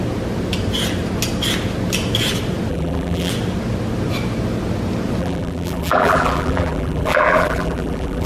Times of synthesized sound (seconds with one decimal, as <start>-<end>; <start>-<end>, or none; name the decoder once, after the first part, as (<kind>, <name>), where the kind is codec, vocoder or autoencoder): 2.7-3.3 (vocoder, BigVGAN v2); 5.2-8.3